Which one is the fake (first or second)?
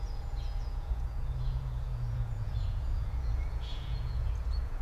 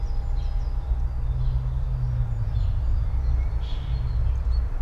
first